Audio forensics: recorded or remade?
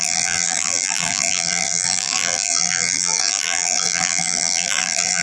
remade